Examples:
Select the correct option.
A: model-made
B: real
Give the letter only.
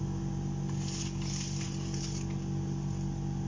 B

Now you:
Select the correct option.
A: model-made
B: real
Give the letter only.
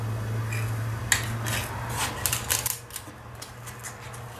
B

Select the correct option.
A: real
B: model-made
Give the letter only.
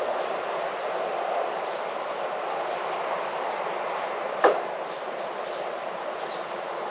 A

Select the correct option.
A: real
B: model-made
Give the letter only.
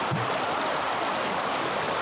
B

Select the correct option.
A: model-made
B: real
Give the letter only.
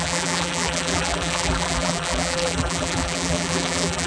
A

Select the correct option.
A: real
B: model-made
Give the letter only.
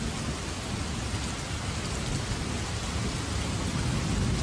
A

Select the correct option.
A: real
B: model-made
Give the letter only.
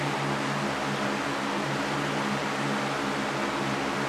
A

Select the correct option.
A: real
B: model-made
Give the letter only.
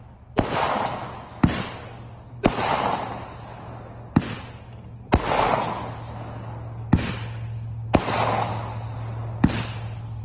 A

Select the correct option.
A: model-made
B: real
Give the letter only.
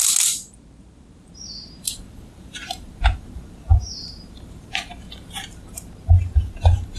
A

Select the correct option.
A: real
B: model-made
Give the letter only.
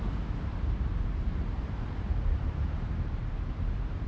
B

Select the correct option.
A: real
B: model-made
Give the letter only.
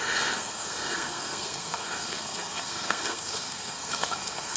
B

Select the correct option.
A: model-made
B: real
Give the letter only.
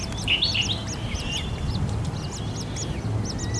B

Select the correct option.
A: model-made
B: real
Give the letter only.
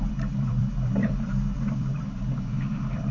A